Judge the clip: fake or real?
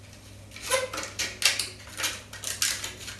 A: real